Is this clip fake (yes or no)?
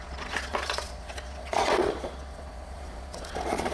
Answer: yes